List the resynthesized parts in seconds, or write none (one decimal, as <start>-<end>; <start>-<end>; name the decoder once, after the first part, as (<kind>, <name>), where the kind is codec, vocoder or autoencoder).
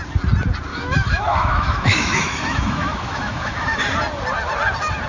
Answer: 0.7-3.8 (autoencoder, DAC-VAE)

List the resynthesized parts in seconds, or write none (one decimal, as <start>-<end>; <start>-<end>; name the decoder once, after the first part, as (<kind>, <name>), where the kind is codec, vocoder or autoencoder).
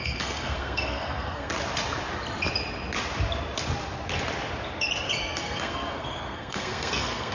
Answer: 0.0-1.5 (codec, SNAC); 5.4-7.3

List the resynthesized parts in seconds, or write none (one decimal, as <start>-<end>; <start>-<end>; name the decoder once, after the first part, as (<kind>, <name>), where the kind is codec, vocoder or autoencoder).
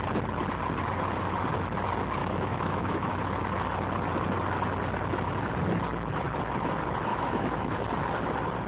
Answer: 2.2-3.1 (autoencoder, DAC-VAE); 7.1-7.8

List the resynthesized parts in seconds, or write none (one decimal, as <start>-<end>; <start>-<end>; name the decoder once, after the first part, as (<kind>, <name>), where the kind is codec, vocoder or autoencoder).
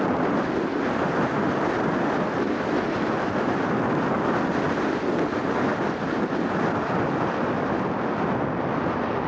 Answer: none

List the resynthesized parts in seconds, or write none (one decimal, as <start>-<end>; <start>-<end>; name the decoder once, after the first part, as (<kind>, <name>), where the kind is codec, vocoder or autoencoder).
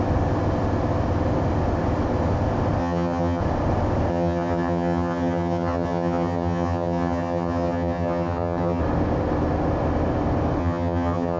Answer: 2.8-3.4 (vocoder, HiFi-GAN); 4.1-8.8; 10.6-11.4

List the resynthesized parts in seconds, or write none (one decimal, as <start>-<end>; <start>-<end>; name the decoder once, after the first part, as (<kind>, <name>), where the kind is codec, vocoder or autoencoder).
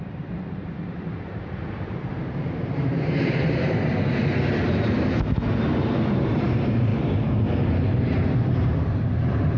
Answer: 0.0-3.9 (vocoder, BigVGAN v2); 6.3-6.9; 7.7-9.6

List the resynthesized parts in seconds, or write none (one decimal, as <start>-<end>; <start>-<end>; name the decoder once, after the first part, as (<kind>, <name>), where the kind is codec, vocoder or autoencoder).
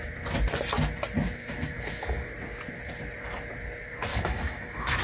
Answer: 1.4-2.3 (autoencoder, DAC-VAE); 4.1-5.0